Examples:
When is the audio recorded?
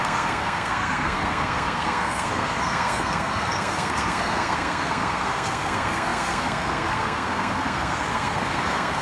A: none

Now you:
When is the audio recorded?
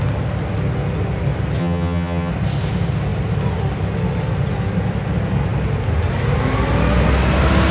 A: 0.0-1.6; 2.3-7.7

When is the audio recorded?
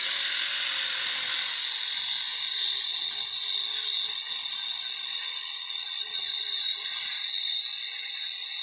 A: 0.0-5.1; 6.4-8.6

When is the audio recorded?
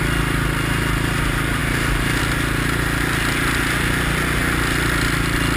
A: 0.0-5.6